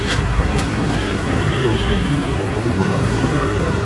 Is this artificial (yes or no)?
yes